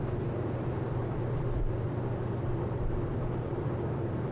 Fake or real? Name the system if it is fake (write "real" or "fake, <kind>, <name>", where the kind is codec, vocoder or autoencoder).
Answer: real